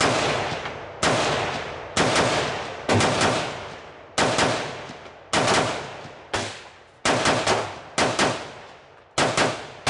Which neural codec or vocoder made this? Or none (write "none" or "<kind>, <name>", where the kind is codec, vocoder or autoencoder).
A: none